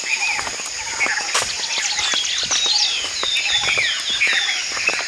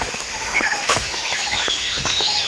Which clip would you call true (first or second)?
first